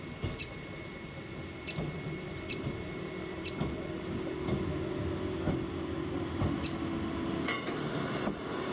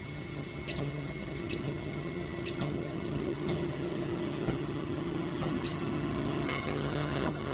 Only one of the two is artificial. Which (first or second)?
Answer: second